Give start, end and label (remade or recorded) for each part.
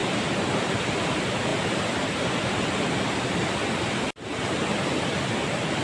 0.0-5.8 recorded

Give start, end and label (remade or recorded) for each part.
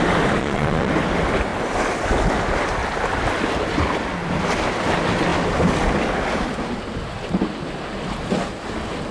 0.0-0.4 recorded; 0.4-0.9 remade; 0.9-9.1 recorded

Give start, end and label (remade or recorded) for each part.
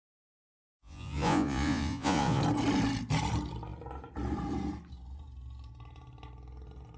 0.0-0.5 recorded; 0.5-2.4 remade; 2.4-7.0 recorded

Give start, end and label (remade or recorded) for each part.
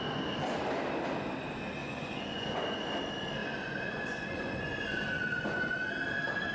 0.0-1.8 recorded; 1.8-2.8 remade; 2.8-3.4 recorded; 3.4-5.9 remade; 5.9-6.5 recorded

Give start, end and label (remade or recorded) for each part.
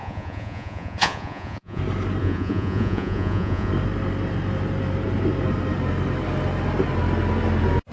0.0-1.8 remade; 1.8-2.2 recorded; 2.2-3.7 remade; 3.7-7.9 recorded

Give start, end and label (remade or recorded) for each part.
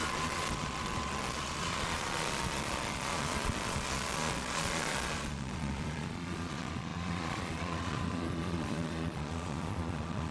0.0-10.3 remade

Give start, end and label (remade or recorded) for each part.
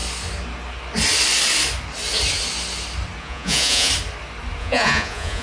0.0-3.2 recorded; 3.2-3.9 remade; 3.9-4.6 recorded; 4.6-5.4 remade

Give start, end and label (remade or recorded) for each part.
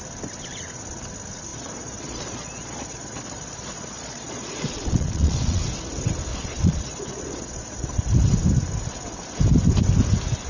0.0-1.5 recorded; 1.5-5.6 remade; 5.6-6.3 recorded; 6.3-8.0 remade; 8.0-10.5 recorded